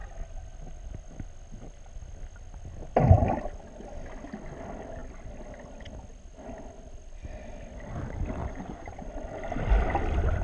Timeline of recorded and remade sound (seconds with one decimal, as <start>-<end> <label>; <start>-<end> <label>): 0.0-8.4 recorded; 8.4-9.1 remade; 9.1-10.4 recorded